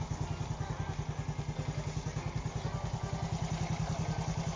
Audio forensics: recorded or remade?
recorded